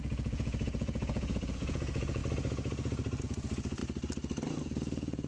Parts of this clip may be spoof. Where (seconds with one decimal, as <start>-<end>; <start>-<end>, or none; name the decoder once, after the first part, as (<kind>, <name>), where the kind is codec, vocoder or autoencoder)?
0.0-2.2 (vocoder, Vocos); 3.2-3.8; 4.5-5.3